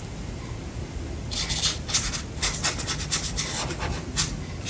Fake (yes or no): no